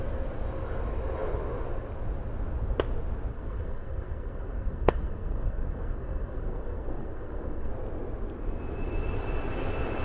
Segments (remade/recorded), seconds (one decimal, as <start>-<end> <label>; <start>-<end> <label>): 0.0-3.3 recorded; 3.3-7.7 remade; 7.7-10.0 recorded